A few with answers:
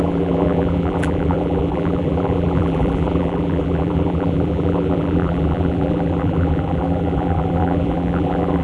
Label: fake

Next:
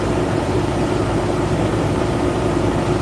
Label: fake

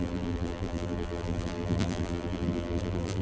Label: fake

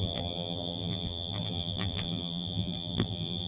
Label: fake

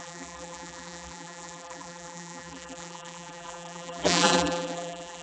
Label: fake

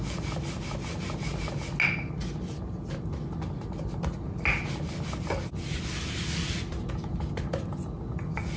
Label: real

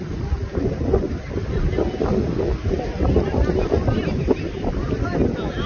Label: fake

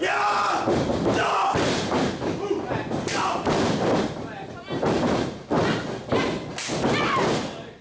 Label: real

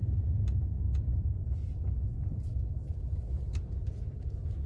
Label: real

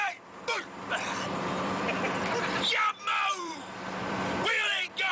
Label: fake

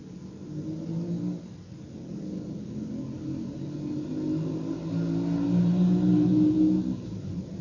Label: real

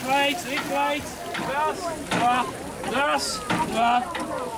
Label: real